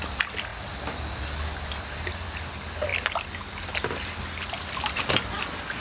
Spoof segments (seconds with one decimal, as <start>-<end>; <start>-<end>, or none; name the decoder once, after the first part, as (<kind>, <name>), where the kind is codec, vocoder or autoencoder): none